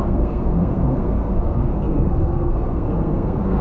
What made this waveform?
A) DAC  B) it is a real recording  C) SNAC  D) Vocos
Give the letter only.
C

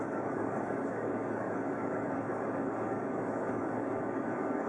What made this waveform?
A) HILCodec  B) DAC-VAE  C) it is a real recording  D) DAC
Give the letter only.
D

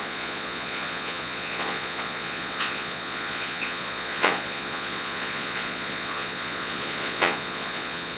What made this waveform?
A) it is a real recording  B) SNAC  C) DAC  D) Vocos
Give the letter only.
D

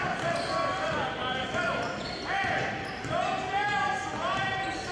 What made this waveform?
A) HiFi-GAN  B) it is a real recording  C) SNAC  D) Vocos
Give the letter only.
B